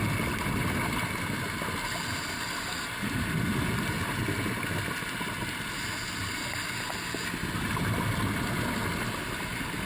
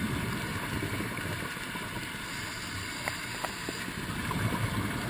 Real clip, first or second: first